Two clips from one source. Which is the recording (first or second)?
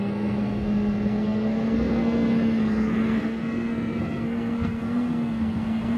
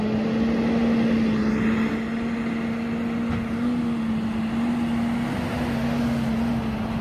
second